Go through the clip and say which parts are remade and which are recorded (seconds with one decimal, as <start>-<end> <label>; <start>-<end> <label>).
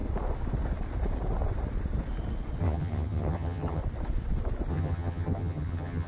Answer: 0.0-2.6 recorded; 2.6-3.8 remade; 3.8-4.7 recorded; 4.7-6.1 remade